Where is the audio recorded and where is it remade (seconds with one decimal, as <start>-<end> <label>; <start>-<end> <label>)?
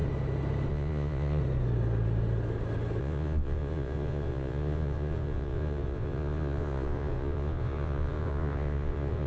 0.0-0.7 recorded; 0.7-1.4 remade; 1.4-3.0 recorded; 3.0-9.3 remade